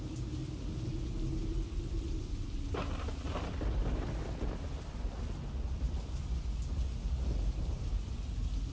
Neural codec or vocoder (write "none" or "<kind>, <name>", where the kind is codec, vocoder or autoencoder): none